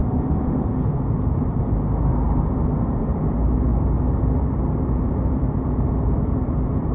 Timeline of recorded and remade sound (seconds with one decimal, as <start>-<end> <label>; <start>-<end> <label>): 0.0-3.0 recorded; 3.0-6.9 remade